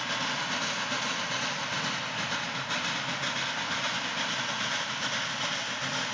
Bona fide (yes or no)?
yes